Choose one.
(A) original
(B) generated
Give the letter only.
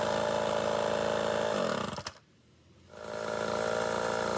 A